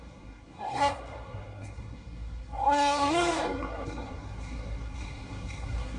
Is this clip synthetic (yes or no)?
yes